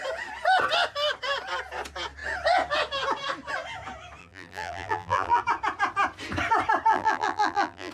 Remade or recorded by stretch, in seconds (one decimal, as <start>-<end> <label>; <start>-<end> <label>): 0.0-4.2 recorded; 4.2-5.4 remade; 5.4-6.9 recorded; 6.9-7.9 remade